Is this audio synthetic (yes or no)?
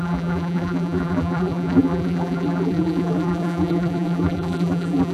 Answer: yes